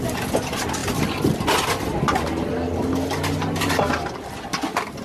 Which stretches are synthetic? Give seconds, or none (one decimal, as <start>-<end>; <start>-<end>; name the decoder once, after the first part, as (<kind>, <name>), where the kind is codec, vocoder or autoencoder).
none